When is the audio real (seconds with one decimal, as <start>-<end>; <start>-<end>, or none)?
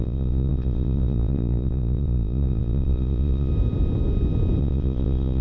3.5-4.6